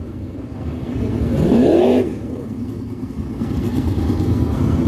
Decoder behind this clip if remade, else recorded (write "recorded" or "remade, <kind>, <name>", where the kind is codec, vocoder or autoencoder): remade, codec, SNAC